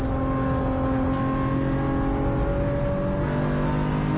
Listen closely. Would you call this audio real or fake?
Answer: real